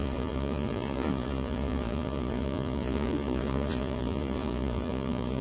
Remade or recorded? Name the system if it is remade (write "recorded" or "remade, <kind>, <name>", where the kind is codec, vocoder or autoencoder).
remade, vocoder, Vocos